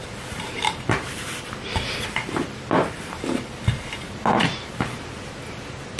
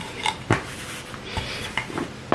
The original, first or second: second